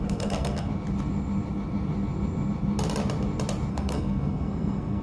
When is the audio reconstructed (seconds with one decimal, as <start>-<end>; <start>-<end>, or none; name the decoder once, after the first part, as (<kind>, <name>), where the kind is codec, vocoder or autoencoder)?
0.0-0.7 (codec, SNAC); 3.7-5.0